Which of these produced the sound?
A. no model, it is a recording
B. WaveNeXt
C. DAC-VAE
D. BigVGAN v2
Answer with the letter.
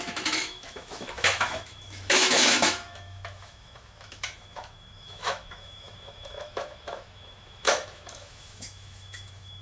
C